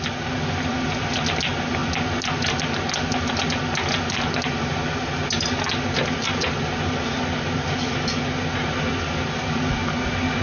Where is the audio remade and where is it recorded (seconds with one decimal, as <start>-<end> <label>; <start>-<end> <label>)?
0.0-10.4 recorded